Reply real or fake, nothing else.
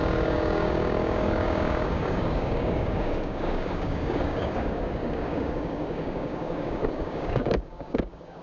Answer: fake